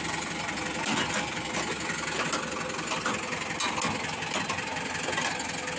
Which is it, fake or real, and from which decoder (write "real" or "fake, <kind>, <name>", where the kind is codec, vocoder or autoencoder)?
real